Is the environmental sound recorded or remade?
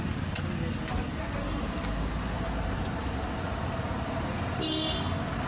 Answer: recorded